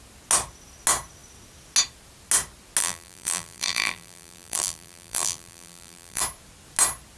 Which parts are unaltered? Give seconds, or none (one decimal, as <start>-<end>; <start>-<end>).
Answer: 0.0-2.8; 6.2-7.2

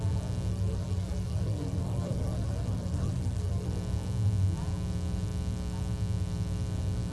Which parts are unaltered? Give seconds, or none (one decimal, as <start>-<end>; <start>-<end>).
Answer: 0.0-0.5; 3.7-7.1

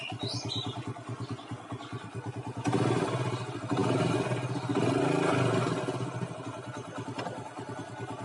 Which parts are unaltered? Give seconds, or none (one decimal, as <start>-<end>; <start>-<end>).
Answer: 0.0-8.2

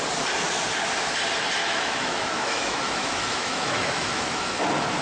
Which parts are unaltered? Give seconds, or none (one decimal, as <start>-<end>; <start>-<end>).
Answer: 0.0-1.6; 4.6-5.0

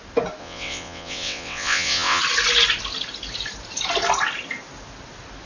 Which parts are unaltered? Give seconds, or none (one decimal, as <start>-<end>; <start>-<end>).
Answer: 0.0-0.4; 2.2-5.5

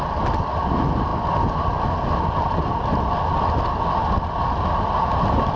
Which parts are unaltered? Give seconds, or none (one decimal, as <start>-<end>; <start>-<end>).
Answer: 0.0-5.6